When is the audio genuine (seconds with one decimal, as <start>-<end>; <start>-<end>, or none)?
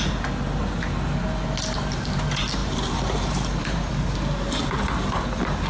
0.0-2.6; 3.9-5.7